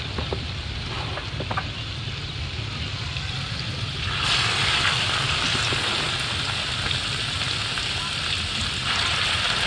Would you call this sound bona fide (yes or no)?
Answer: yes